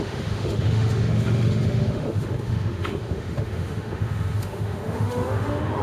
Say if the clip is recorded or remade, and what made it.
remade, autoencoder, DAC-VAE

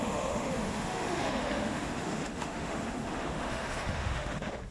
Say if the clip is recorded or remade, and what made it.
remade, autoencoder, DAC-VAE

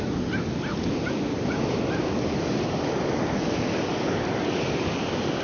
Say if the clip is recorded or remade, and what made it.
recorded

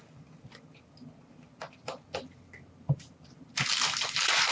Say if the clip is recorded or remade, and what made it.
recorded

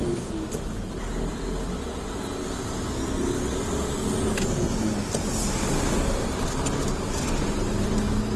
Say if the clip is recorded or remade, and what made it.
recorded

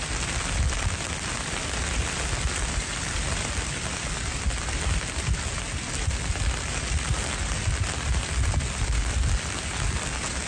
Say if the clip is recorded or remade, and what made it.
recorded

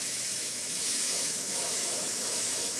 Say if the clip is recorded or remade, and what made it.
remade, autoencoder, DAC-VAE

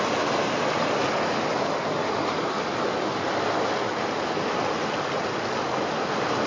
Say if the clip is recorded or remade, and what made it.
recorded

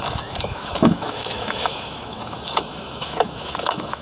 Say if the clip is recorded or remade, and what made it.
remade, autoencoder, DAC-VAE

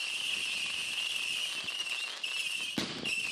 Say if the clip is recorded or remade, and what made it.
recorded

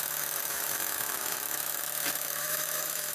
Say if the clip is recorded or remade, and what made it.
remade, autoencoder, DAC-VAE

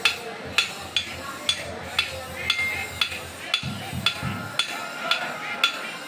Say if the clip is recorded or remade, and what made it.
recorded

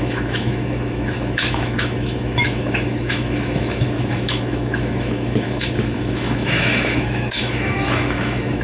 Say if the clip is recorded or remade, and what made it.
remade, autoencoder, DAC-VAE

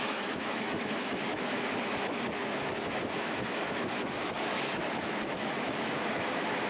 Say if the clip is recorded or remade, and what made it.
remade, autoencoder, DAC-VAE